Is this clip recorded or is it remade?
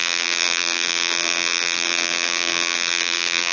remade